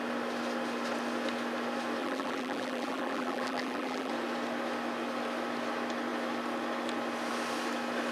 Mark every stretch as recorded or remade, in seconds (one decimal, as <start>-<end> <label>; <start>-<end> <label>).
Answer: 0.0-2.0 recorded; 2.0-4.1 remade; 4.1-8.1 recorded